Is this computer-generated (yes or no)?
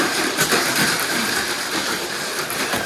yes